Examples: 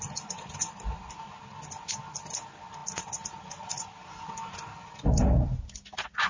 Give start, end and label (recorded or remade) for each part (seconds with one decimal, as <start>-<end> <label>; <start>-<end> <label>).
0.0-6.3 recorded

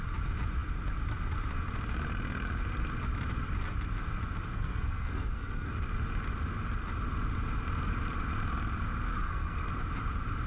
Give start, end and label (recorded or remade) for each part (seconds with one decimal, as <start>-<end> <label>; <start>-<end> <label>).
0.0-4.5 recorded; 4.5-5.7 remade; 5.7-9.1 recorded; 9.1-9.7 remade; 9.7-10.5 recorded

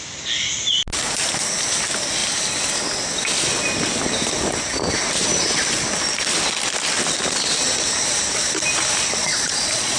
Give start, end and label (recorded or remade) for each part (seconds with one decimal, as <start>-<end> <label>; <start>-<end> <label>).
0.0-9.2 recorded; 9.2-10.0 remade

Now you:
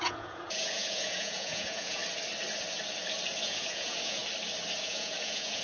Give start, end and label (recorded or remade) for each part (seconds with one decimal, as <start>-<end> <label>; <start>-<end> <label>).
0.0-2.0 remade; 2.0-3.4 recorded; 3.4-4.2 remade; 4.2-4.8 recorded; 4.8-5.6 remade